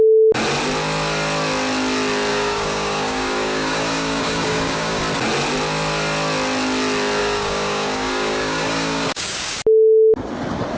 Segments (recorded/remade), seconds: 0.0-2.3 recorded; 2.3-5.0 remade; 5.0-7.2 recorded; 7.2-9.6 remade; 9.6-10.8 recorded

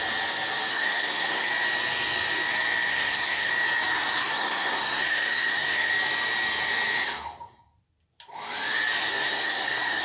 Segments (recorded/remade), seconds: 0.0-0.7 recorded; 0.7-1.5 remade; 1.5-2.9 recorded; 2.9-3.5 remade; 3.5-4.2 recorded; 4.2-5.9 remade; 5.9-9.1 recorded; 9.1-10.0 remade

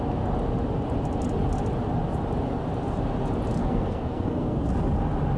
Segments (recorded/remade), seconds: 0.0-3.6 recorded; 3.6-4.7 remade; 4.7-5.4 recorded

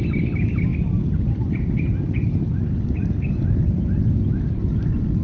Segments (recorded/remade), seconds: 0.0-5.2 recorded

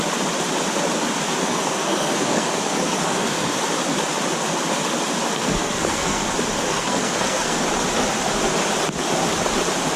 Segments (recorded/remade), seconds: 0.0-1.4 recorded; 1.4-3.6 remade; 3.6-5.4 recorded; 5.4-6.3 remade; 6.3-6.7 recorded; 6.7-7.6 remade; 7.6-10.0 recorded

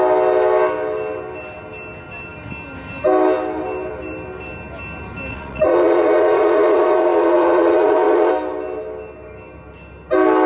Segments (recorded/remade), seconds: 0.0-5.3 recorded; 5.3-8.3 remade; 8.3-10.5 recorded

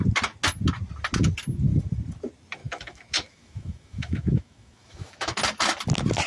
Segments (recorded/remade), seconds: 0.0-2.6 recorded; 2.6-5.4 remade; 5.4-6.3 recorded

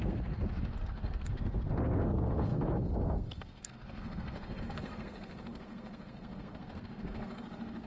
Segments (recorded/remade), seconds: 0.0-7.9 remade